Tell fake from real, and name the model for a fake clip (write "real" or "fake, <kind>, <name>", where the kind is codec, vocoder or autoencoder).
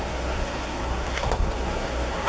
fake, codec, SNAC